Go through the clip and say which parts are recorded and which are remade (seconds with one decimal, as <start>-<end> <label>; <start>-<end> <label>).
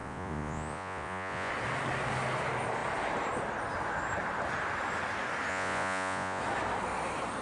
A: 0.0-1.5 remade; 1.5-5.5 recorded; 5.5-6.4 remade; 6.4-7.4 recorded